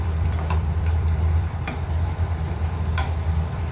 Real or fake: fake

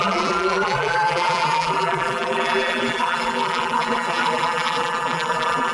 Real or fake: fake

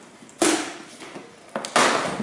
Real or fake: real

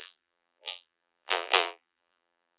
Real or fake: fake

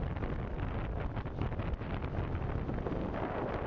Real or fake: real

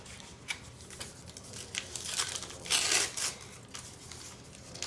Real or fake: real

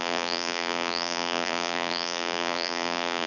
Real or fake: fake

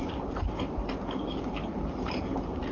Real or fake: fake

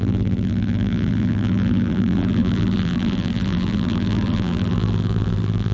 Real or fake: fake